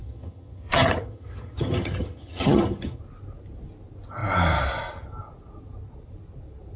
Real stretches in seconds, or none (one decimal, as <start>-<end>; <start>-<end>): 3.0-6.8